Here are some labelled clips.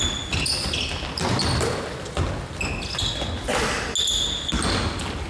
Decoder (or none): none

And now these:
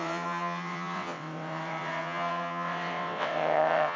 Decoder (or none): vocoder, WaveNeXt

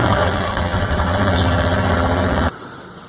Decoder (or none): vocoder, WaveNeXt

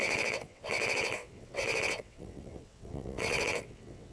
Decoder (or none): vocoder, WaveNeXt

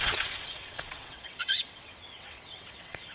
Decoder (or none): vocoder, WaveNeXt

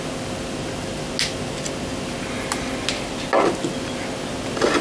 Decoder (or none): none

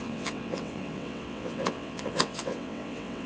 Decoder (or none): vocoder, WaveNeXt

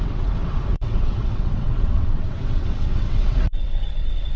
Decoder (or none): vocoder, WaveNeXt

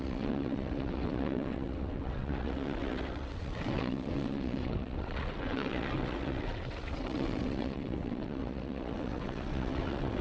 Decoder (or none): vocoder, WaveNeXt